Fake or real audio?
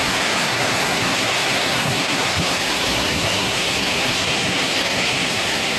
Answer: fake